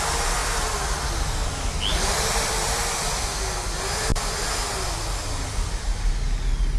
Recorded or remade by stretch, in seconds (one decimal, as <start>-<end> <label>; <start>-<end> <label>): 0.0-6.8 recorded